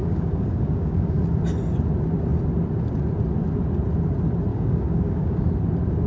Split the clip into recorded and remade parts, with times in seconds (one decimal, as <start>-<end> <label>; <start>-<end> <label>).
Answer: 0.0-1.2 remade; 1.2-4.5 recorded; 4.5-5.5 remade; 5.5-6.1 recorded